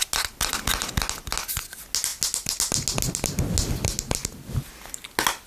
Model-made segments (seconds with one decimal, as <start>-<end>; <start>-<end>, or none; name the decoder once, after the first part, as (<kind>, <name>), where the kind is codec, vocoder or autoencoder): none